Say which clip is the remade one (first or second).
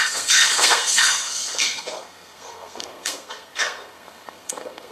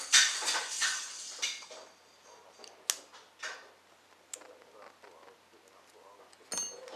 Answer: first